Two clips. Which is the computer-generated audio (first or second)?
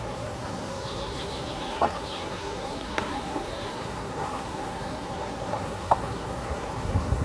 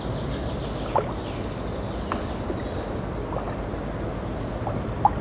first